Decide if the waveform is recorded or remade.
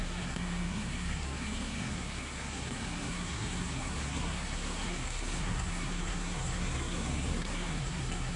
remade